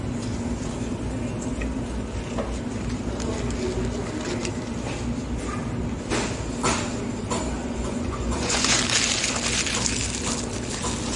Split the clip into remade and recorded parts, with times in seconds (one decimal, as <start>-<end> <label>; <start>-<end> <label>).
0.0-7.6 recorded; 7.6-8.8 remade; 8.8-11.2 recorded